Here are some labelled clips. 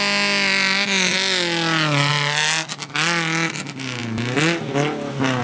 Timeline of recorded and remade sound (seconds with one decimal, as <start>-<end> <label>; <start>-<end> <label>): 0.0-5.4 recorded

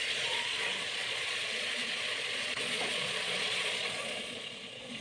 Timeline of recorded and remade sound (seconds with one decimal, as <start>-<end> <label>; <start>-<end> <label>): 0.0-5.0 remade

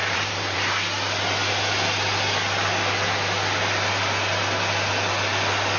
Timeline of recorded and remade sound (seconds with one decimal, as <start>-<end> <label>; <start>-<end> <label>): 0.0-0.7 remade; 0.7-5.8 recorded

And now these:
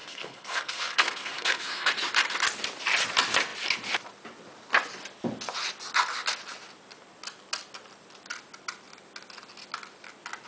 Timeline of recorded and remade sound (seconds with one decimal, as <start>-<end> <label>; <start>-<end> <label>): 0.0-1.9 remade; 1.9-10.5 recorded

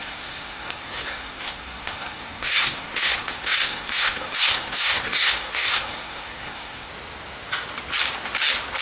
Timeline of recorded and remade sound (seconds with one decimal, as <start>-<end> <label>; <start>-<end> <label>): 0.0-6.9 remade; 6.9-8.8 recorded

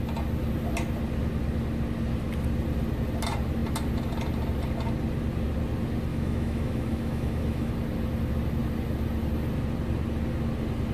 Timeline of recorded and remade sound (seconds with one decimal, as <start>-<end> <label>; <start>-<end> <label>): 0.0-6.1 recorded; 6.1-7.7 remade; 7.7-10.9 recorded

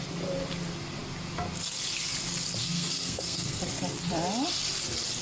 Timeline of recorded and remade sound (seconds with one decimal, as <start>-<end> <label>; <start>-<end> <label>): 0.0-2.6 recorded; 2.6-3.6 remade; 3.6-5.2 recorded

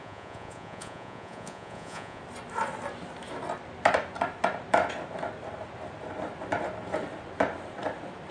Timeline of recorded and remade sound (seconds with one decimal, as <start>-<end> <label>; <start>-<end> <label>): 0.0-2.2 remade; 2.2-8.3 recorded